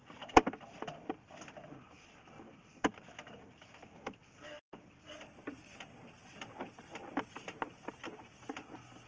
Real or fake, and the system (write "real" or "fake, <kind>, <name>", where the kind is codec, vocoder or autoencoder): real